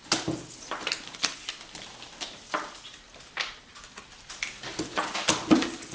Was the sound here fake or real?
real